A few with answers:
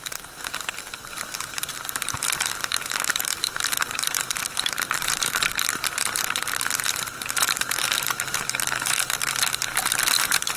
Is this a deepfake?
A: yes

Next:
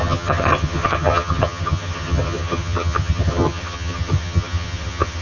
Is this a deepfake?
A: yes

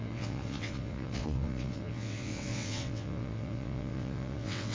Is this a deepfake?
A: yes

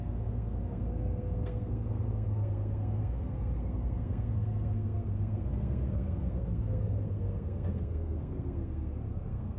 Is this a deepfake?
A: yes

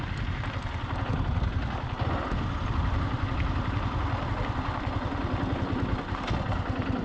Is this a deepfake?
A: no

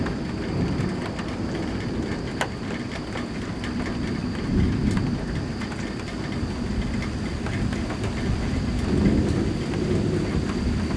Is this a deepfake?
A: no